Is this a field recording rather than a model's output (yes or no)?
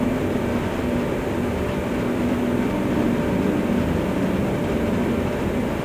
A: yes